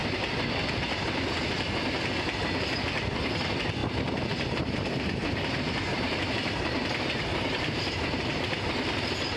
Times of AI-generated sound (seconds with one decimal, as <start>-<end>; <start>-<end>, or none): 3.8-8.2